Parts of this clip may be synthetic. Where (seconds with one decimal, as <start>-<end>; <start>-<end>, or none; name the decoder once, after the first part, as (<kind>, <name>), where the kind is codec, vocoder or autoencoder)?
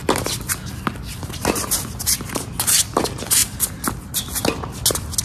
none